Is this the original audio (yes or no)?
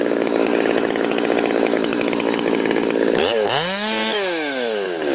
no